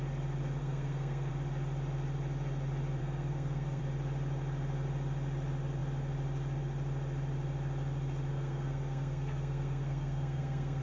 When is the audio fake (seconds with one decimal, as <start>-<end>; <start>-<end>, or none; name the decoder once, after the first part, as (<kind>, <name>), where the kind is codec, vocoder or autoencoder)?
0.6-1.3 (codec, SNAC); 3.0-3.8; 8.3-10.8